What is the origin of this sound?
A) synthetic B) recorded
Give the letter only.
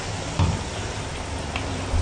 B